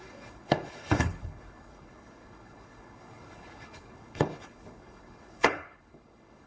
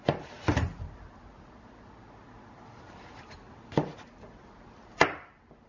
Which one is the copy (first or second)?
first